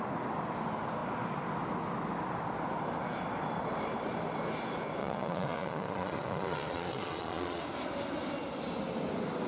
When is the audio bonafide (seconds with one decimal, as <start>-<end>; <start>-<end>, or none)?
0.0-5.0; 7.6-9.5